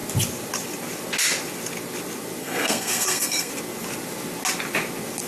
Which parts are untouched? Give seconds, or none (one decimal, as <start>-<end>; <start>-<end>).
0.0-2.4; 3.5-5.3